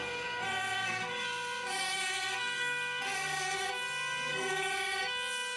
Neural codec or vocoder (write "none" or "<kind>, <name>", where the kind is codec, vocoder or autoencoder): codec, SNAC